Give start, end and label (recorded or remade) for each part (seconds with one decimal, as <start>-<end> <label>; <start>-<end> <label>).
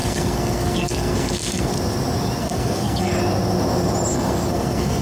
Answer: 0.0-1.7 remade; 1.7-2.4 recorded; 2.4-3.1 remade; 3.1-4.1 recorded; 4.1-5.0 remade